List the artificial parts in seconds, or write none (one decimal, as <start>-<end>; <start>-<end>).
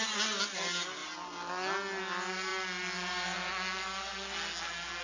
none